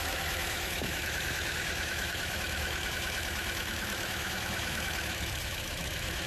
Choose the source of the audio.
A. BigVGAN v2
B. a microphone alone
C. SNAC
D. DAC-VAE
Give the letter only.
D